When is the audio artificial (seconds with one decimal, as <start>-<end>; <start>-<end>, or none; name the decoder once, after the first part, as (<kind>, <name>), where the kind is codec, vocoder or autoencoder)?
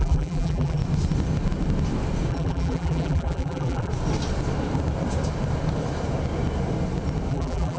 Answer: 0.0-0.8 (vocoder, BigVGAN v2); 2.3-3.9; 7.3-7.8